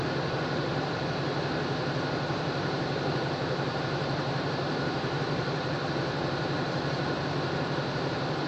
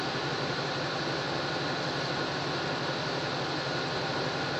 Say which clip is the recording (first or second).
second